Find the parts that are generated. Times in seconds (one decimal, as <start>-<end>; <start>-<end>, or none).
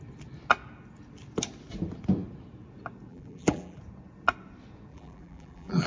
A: 3.1-3.8; 4.9-5.9